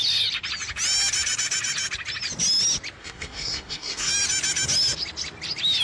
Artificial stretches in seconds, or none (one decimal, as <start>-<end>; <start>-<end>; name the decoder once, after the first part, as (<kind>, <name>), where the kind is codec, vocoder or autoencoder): 3.0-4.1 (codec, SNAC)